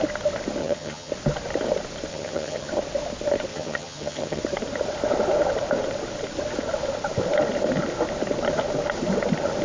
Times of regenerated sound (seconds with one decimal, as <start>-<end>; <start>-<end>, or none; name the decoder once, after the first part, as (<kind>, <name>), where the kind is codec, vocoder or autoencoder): 0.6-1.1 (vocoder, HiFi-GAN); 2.1-2.7; 3.5-4.4